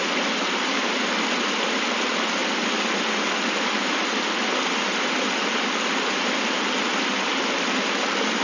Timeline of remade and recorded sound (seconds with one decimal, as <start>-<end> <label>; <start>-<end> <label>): 0.0-8.4 recorded